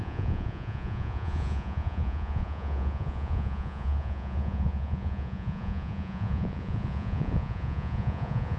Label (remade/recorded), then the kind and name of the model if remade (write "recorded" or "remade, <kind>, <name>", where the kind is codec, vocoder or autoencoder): remade, vocoder, Vocos